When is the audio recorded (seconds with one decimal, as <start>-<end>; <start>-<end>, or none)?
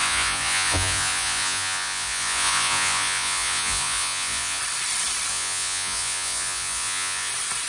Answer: 4.6-5.3; 7.3-7.7